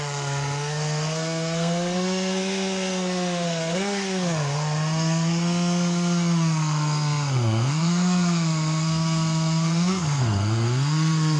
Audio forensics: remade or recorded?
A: remade